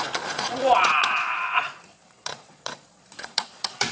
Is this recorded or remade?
remade